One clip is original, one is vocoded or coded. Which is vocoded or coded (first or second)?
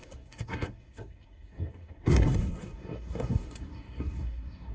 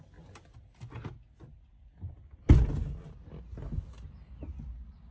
first